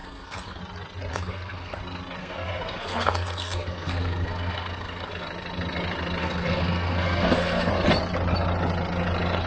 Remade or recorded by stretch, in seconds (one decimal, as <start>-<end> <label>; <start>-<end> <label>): 0.0-0.6 remade; 0.6-1.1 recorded; 1.1-1.8 remade; 1.8-2.2 recorded; 2.2-5.1 remade; 5.1-6.2 recorded; 6.2-7.7 remade; 7.7-9.5 recorded